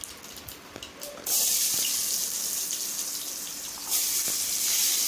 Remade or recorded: recorded